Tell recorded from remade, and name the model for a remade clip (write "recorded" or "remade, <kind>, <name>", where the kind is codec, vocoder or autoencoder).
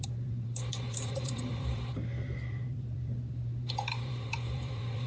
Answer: remade, vocoder, BigVGAN v2